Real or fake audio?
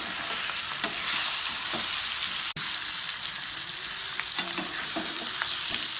real